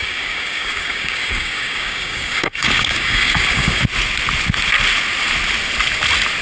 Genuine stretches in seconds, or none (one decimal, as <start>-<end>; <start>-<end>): 3.8-6.4